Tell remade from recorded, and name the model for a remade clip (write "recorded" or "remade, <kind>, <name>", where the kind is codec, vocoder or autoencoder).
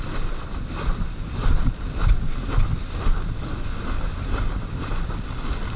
recorded